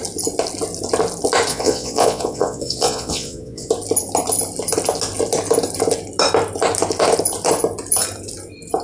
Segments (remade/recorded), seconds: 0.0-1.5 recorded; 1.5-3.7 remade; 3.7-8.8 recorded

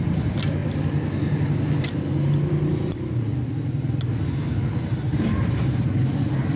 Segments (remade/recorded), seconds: 0.0-6.6 recorded